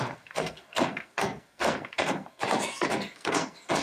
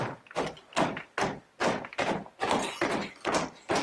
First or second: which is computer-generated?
first